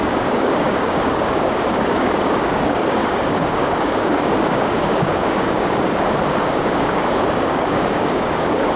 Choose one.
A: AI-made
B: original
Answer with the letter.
A